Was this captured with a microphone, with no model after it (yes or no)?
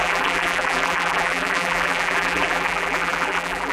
no